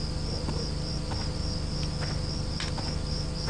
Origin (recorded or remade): remade